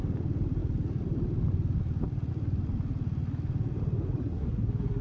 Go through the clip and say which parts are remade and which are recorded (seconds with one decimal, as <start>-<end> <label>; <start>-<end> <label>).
0.0-4.2 recorded; 4.2-5.0 remade